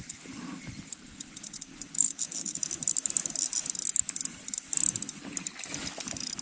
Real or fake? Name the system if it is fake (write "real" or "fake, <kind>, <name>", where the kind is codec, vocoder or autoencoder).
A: real